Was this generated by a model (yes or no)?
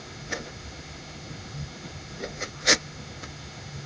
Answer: yes